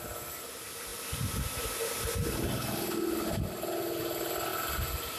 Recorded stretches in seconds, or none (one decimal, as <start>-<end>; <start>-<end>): 0.0-5.2